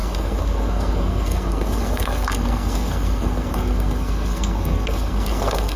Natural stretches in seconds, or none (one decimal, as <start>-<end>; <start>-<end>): none

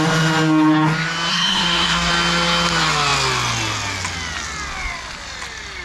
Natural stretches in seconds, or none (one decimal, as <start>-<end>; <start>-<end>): 0.0-1.3; 2.1-5.8

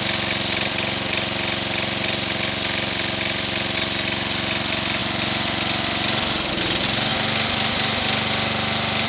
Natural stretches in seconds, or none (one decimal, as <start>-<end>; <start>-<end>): 0.0-9.1

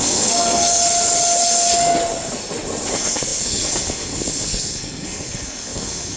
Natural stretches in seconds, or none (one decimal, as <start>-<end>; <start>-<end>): 0.8-2.9